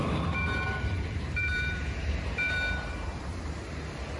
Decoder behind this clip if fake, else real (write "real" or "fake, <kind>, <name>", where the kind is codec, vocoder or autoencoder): fake, vocoder, BigVGAN v2